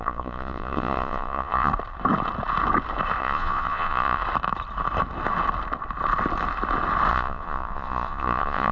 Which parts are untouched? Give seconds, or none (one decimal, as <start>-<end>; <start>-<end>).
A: 1.7-3.2; 4.2-7.1